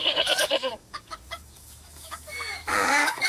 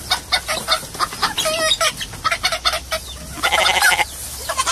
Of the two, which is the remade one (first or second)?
first